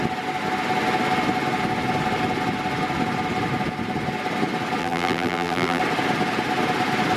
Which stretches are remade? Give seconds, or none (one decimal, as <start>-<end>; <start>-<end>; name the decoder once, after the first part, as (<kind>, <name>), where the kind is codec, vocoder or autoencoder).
4.8-5.8 (vocoder, BigVGAN v2)